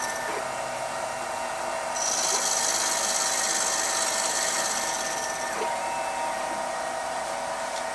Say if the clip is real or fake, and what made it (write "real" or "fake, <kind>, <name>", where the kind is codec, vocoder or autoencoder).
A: real